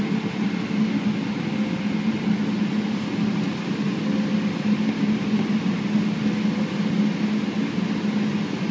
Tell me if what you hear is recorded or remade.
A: recorded